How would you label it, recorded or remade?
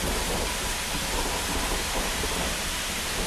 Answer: remade